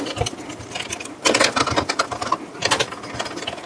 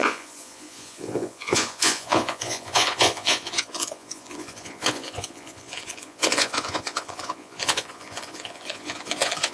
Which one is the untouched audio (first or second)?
first